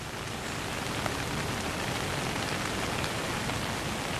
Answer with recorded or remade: recorded